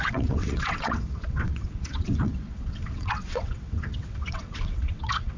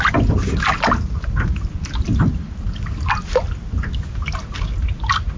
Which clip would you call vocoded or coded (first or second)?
first